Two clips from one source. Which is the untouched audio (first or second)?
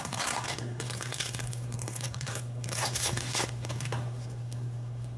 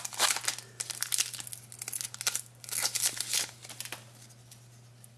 second